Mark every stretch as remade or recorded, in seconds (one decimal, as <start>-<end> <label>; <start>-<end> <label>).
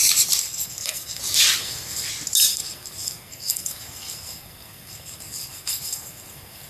0.0-0.4 recorded; 0.4-1.2 remade; 1.2-1.6 recorded; 1.6-2.1 remade; 2.1-2.5 recorded; 2.5-6.7 remade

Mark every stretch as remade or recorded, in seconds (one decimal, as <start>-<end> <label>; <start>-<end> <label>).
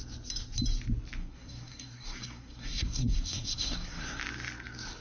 0.0-1.2 recorded; 1.2-4.2 remade; 4.2-5.0 recorded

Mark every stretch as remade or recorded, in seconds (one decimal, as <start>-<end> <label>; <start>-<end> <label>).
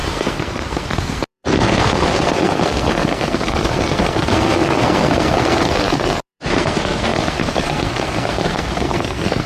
0.0-9.5 remade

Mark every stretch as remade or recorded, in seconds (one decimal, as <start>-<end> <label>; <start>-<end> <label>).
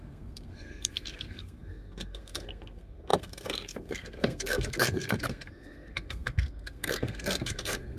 0.0-8.0 remade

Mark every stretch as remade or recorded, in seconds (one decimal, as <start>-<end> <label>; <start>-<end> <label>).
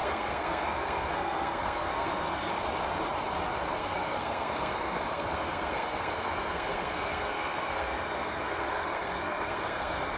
0.0-2.5 remade; 2.5-3.7 recorded; 3.7-10.2 remade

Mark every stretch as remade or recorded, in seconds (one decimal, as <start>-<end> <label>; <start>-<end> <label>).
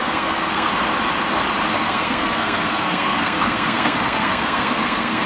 0.0-0.7 remade; 0.7-1.7 recorded; 1.7-5.3 remade